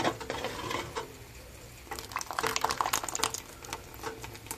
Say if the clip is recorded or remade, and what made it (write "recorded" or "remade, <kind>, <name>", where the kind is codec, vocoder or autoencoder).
recorded